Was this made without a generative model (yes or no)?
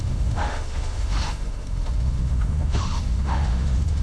no